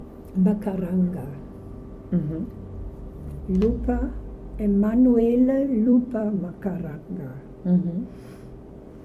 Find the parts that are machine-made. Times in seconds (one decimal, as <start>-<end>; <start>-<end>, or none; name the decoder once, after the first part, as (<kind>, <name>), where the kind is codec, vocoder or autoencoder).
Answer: 5.2-7.3 (vocoder, BigVGAN v2); 8.6-9.0